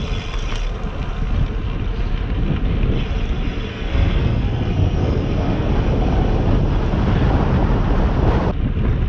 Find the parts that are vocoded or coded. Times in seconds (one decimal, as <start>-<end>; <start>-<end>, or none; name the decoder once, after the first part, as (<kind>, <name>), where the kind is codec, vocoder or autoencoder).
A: 3.7-5.7 (codec, SNAC)